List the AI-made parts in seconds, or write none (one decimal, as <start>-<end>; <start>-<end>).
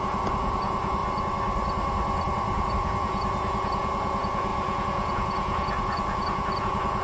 0.0-1.0; 2.7-7.0